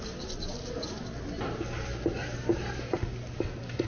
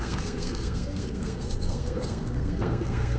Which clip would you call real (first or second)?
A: first